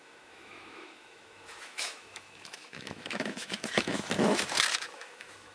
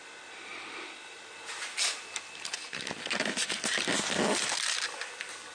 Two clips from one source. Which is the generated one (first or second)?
first